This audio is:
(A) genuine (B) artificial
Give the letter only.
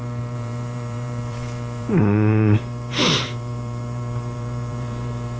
B